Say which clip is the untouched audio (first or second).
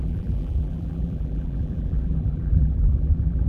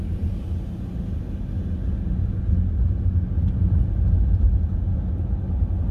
second